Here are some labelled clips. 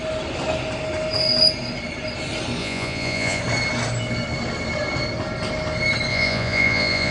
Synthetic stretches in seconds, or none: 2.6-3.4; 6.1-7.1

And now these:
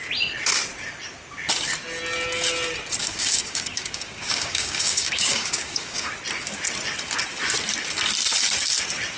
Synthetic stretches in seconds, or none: 3.0-6.1

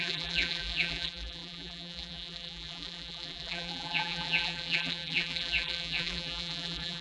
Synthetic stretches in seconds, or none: 0.0-7.0

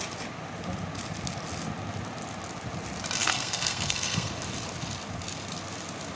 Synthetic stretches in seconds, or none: 3.2-4.3

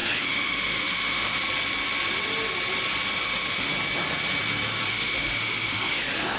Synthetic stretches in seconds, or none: 0.0-1.4; 3.2-3.7; 4.9-6.4

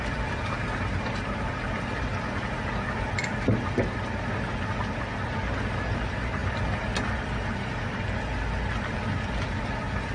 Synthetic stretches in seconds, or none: none